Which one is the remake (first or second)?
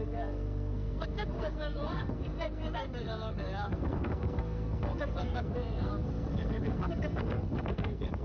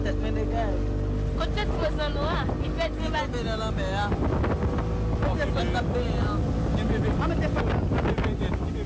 first